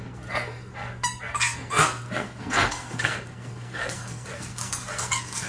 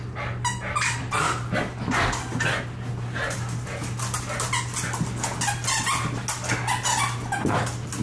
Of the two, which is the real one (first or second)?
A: second